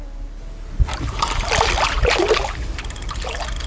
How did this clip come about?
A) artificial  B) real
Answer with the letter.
B